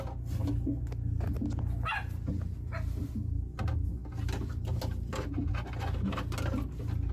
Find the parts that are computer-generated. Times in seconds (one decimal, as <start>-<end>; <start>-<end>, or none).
none